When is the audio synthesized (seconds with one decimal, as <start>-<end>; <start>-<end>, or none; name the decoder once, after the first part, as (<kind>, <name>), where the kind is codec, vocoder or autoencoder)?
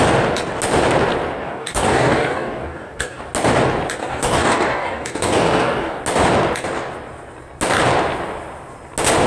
1.4-3.2 (codec, DAC); 4.0-6.0